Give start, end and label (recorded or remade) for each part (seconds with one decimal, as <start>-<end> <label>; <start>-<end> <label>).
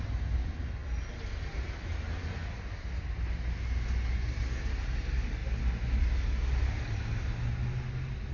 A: 0.0-8.3 recorded